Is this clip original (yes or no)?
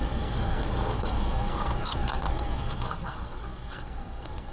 no